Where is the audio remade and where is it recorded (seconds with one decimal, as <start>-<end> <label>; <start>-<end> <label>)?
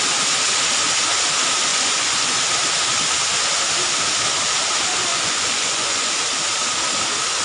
0.0-1.7 recorded; 1.7-2.4 remade; 2.4-5.1 recorded; 5.1-6.1 remade; 6.1-7.4 recorded